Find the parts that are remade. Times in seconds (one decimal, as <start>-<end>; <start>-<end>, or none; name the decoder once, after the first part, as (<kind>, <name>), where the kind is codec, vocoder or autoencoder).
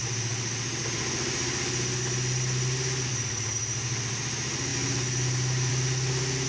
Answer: none